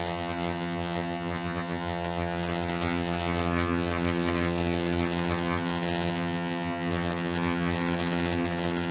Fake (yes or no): yes